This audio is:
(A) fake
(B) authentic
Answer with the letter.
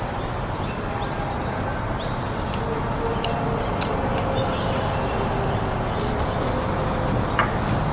B